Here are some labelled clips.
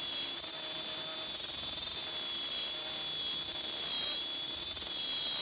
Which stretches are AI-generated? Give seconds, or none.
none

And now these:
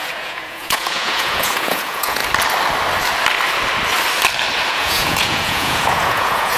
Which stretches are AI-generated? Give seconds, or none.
0.0-2.2 (vocoder, Vocos); 4.7-6.6

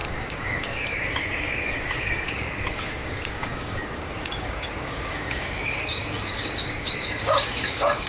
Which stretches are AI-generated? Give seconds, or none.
0.0-8.1 (codec, DAC)

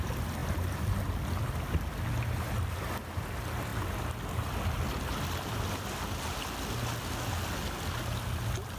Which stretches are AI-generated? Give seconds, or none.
0.4-1.0 (vocoder, BigVGAN v2)

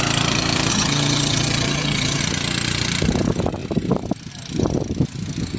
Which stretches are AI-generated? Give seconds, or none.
0.7-2.2 (vocoder, HiFi-GAN)

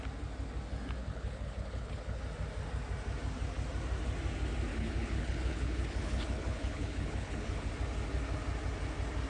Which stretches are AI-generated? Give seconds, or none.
1.0-2.2 (codec, HILCodec); 4.7-7.7